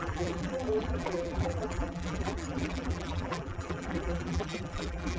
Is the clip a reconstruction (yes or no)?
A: yes